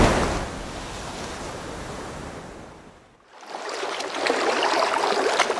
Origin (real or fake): real